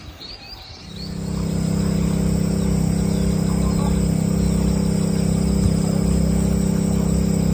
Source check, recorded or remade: recorded